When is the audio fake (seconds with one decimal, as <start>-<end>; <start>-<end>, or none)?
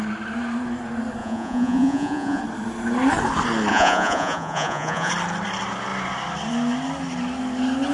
1.2-2.4; 3.7-5.1